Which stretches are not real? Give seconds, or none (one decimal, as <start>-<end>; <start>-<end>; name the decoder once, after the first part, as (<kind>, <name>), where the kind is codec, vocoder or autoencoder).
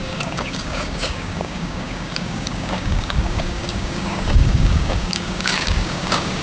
0.0-6.4 (codec, DAC)